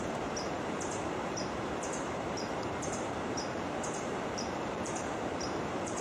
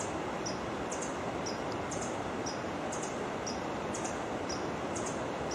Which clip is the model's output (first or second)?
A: first